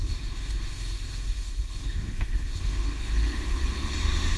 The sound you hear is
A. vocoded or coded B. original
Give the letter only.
A